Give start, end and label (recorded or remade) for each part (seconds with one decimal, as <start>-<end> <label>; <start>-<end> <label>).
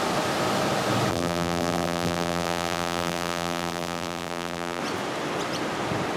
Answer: 0.0-1.1 recorded; 1.1-4.8 remade; 4.8-6.2 recorded